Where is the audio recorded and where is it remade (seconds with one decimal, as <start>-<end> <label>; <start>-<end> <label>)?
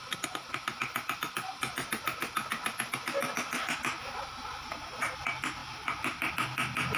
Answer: 0.0-5.6 recorded; 5.6-6.3 remade; 6.3-7.0 recorded